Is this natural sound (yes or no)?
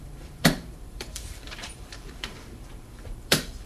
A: no